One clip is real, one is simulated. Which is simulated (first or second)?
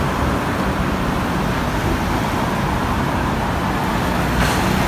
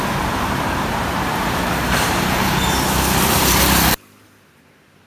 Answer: second